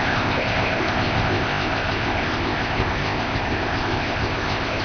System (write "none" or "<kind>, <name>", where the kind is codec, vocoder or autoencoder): codec, ZipCodec